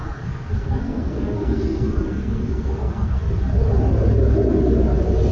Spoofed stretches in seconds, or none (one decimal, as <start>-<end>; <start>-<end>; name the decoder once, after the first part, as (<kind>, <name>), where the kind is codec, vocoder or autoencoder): 0.0-3.2 (codec, SNAC)